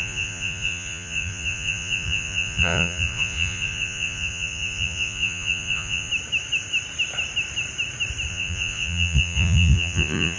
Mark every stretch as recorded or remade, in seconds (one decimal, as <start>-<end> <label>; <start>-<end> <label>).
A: 0.0-6.1 remade; 6.1-8.3 recorded; 8.3-10.4 remade